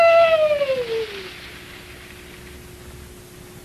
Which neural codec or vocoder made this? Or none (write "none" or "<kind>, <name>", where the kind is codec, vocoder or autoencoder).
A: none